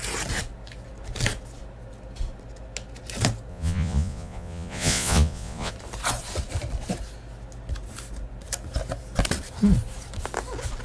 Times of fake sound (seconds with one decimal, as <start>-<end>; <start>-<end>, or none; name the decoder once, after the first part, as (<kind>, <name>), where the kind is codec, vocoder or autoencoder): 3.5-5.7 (vocoder, Vocos)